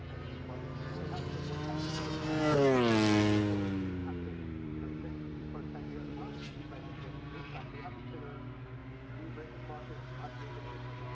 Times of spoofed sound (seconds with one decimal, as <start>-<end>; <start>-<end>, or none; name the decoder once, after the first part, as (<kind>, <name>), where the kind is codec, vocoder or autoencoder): 4.0-8.2 (vocoder, BigVGAN v2)